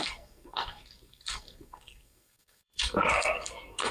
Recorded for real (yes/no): no